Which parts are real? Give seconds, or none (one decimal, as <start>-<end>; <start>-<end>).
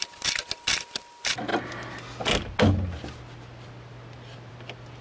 0.0-5.0